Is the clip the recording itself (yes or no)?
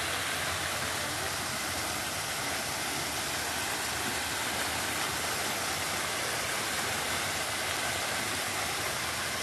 yes